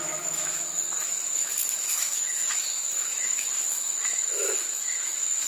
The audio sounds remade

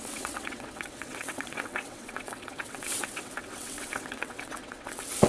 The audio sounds remade